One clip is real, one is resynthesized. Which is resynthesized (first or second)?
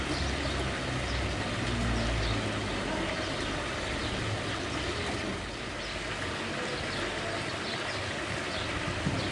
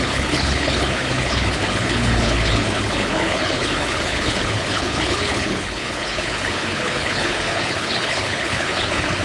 second